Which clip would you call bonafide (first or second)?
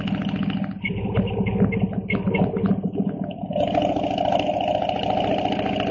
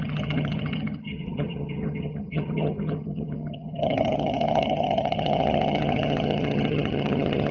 first